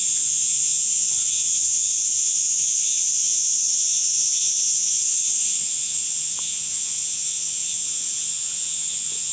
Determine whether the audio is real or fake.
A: fake